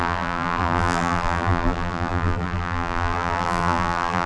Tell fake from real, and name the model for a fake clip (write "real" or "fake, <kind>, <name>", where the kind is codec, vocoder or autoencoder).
fake, vocoder, BigVGAN v2